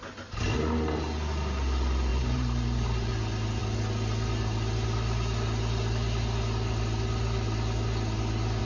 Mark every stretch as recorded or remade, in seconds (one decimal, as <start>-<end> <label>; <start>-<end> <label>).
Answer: 0.0-2.1 recorded; 2.1-3.1 remade; 3.1-8.6 recorded

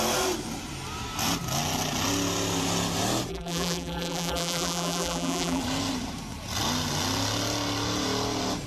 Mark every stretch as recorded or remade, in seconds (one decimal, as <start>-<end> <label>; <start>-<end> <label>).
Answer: 0.0-3.3 recorded; 3.3-5.6 remade; 5.6-8.7 recorded

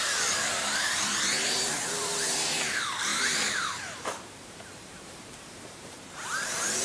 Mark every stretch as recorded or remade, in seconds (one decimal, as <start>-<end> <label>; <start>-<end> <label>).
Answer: 0.0-6.8 remade

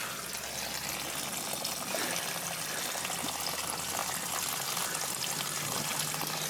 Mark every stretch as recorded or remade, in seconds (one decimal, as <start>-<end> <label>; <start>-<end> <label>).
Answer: 0.0-6.5 recorded

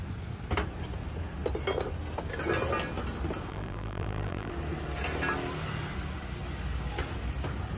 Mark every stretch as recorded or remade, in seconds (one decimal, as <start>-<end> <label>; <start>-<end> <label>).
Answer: 0.0-3.5 recorded; 3.5-4.5 remade; 4.5-7.8 recorded

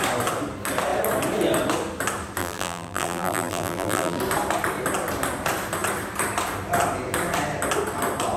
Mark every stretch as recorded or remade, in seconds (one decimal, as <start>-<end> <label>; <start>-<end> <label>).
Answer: 0.0-2.4 recorded; 2.4-4.2 remade; 4.2-8.4 recorded

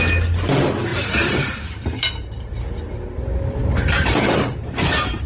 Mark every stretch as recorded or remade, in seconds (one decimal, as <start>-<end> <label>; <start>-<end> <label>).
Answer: 0.0-0.9 recorded; 0.9-2.0 remade; 2.0-3.6 recorded; 3.6-5.3 remade